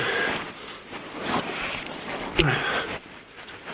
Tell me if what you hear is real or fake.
real